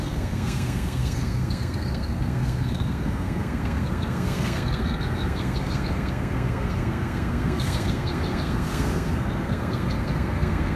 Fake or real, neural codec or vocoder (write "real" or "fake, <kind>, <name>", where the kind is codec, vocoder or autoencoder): fake, codec, SNAC